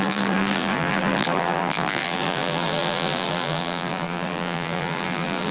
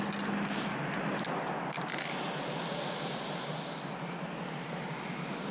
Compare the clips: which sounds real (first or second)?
second